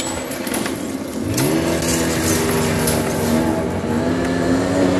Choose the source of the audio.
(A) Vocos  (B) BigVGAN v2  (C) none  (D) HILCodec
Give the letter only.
C